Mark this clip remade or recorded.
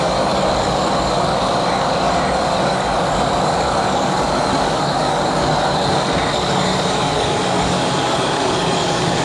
remade